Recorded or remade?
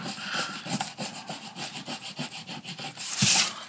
recorded